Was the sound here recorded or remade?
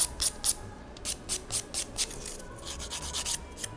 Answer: recorded